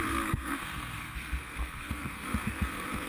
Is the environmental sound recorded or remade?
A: remade